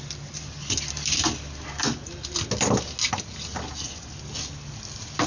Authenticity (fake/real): real